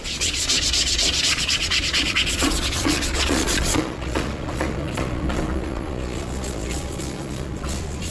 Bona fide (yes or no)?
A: no